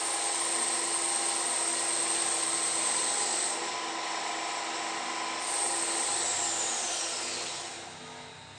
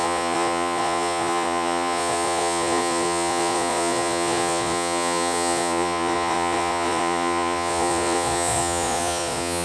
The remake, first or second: second